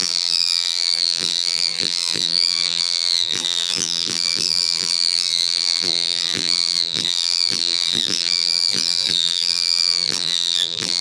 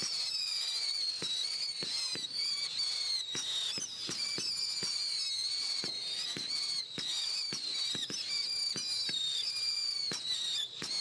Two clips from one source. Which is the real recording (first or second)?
second